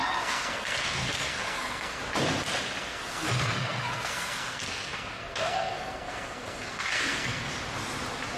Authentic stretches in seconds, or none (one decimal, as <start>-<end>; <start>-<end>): 2.0-2.8; 7.5-8.4